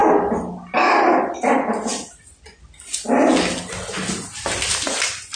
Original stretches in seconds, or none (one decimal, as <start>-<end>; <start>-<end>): 0.0-5.4